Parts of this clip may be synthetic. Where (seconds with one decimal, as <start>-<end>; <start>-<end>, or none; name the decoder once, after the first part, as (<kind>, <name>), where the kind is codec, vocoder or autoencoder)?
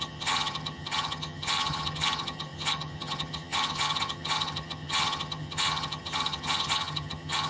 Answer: 0.0-7.5 (vocoder, HiFi-GAN)